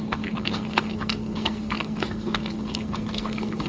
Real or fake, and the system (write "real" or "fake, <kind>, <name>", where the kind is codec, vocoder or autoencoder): fake, codec, SNAC